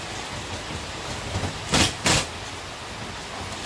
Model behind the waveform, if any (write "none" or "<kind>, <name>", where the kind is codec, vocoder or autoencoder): none